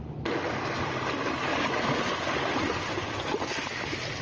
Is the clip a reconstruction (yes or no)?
no